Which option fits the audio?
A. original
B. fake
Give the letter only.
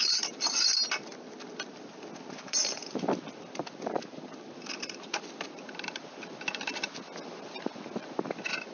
A